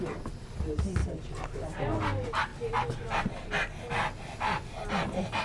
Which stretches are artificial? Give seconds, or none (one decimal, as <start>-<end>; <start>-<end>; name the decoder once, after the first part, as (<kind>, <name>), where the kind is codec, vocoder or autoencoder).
none